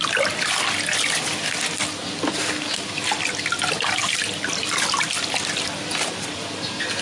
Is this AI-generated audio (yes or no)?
no